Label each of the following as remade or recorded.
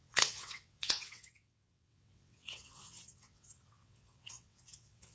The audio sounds remade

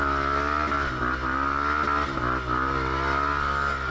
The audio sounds recorded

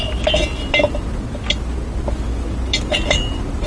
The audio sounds recorded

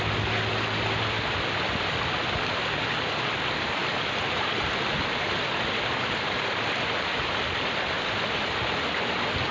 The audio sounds recorded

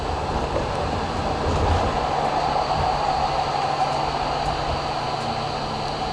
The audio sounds recorded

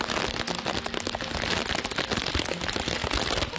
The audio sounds recorded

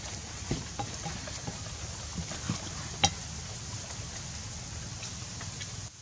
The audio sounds recorded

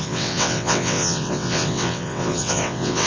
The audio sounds remade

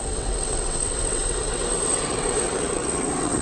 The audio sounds remade